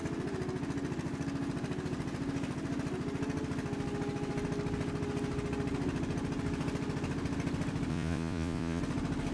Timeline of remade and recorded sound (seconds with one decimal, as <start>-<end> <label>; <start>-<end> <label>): 0.0-7.9 recorded; 7.9-8.8 remade; 8.8-9.3 recorded